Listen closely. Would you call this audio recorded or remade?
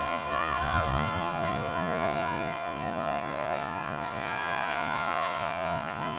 remade